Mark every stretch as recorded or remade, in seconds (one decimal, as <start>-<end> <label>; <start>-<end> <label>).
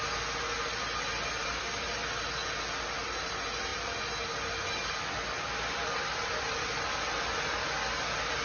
0.0-8.4 recorded